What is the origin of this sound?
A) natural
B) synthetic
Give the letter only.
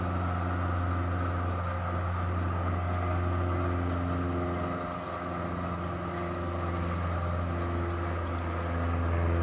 A